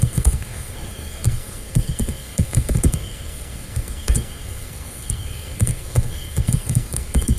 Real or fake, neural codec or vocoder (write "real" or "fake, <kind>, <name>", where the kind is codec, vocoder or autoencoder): fake, codec, SNAC